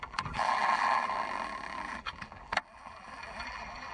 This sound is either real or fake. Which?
fake